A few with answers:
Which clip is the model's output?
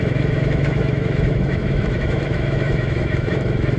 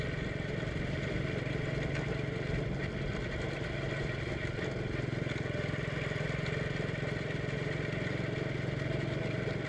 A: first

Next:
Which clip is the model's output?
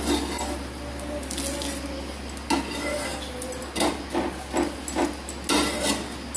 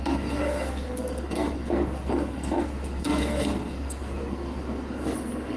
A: second